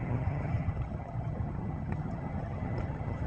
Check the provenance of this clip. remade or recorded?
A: remade